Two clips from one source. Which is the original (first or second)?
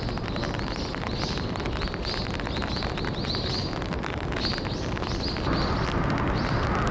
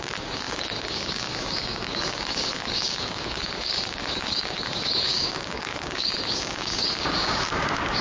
first